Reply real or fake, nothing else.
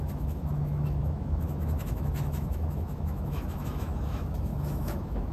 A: fake